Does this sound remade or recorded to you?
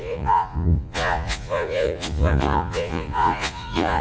remade